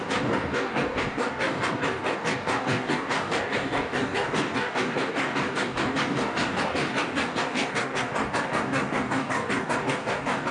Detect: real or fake fake